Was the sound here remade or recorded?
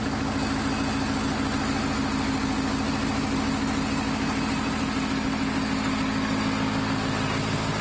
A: recorded